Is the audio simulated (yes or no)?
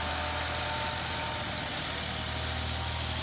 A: no